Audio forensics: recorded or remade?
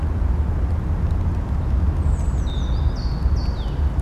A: recorded